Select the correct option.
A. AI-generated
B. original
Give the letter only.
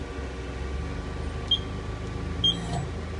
B